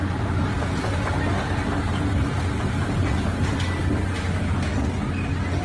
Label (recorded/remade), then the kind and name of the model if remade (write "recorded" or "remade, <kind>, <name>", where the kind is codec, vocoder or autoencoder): recorded